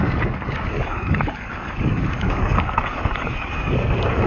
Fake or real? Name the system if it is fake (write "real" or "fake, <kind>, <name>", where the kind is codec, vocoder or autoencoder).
fake, codec, DAC